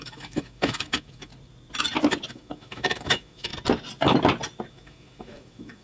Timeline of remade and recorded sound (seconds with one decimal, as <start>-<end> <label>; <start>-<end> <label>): 0.0-1.3 remade; 1.3-2.3 recorded; 2.3-3.5 remade; 3.5-4.7 recorded; 4.7-5.8 remade